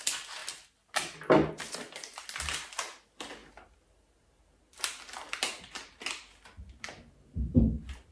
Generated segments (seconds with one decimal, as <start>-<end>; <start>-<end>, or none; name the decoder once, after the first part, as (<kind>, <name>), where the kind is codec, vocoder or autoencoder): none

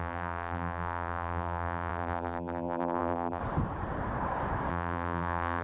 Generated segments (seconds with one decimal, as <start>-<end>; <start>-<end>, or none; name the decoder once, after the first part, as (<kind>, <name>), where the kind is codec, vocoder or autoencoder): 0.0-3.4 (vocoder, BigVGAN v2); 4.7-5.6

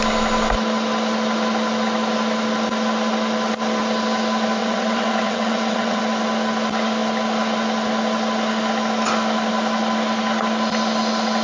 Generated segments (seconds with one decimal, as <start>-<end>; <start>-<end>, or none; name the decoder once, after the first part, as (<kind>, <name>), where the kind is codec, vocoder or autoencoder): 4.6-6.0 (vocoder, WaveNeXt)

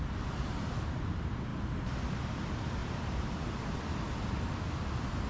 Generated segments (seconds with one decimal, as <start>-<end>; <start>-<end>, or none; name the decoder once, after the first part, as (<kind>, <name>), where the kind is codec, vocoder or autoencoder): 1.5-2.3 (vocoder, BigVGAN v2); 2.8-3.7

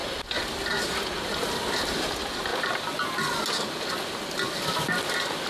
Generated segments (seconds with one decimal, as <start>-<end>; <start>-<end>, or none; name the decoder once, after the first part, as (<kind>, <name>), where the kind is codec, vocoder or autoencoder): 0.0-2.5 (vocoder, BigVGAN v2); 5.1-5.5

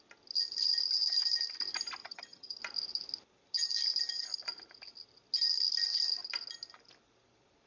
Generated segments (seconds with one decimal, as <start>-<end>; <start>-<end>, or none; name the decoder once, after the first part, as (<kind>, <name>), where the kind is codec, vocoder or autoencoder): 2.0-2.6 (vocoder, HiFi-GAN)

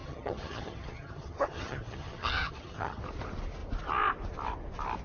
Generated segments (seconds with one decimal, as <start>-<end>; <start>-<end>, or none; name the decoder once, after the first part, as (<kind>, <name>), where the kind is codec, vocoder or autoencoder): 0.0-3.0 (vocoder, HiFi-GAN)

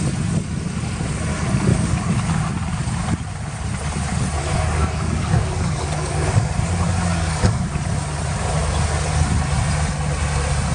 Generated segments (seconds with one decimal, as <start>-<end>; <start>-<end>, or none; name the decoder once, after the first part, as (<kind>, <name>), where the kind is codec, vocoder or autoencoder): 1.7-2.4 (codec, DAC); 4.4-6.5; 7.1-7.7